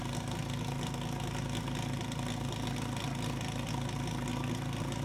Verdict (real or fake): real